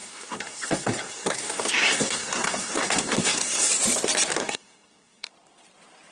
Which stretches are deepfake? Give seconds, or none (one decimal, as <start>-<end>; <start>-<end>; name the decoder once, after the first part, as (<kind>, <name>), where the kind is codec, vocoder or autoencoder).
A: 0.0-3.7 (codec, SNAC); 4.4-5.3